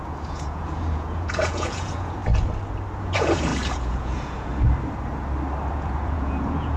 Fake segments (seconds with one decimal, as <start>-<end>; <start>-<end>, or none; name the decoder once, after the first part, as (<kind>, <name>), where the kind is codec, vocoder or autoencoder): 0.0-2.2 (vocoder, Vocos); 3.0-4.5; 5.7-6.8